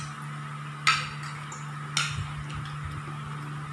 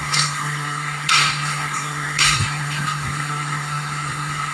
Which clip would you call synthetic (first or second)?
second